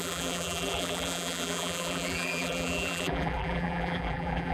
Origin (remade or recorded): remade